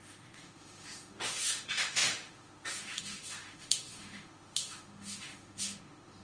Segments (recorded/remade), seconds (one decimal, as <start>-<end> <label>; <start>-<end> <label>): 0.0-6.2 remade